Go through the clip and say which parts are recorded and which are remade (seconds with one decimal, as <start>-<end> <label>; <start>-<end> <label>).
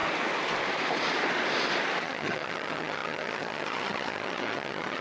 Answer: 0.0-2.0 recorded; 2.0-5.0 remade